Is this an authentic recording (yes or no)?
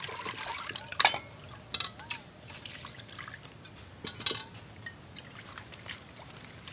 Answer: yes